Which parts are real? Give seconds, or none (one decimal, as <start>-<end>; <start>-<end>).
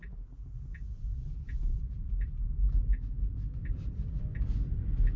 0.0-1.1; 4.2-5.2